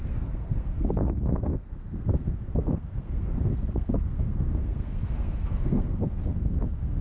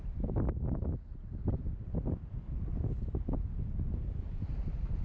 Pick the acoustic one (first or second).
second